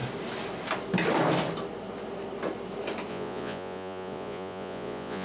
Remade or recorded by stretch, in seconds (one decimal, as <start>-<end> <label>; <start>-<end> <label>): 0.0-3.1 recorded; 3.1-5.2 remade